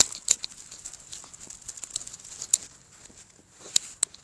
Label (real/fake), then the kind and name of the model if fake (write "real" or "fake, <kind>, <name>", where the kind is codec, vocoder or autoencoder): real